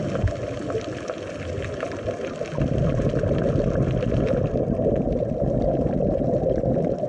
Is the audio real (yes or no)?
yes